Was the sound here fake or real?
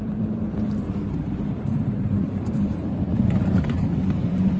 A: fake